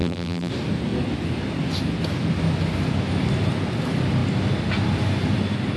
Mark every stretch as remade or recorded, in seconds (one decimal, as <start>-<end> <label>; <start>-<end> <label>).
0.0-0.5 remade; 0.5-5.8 recorded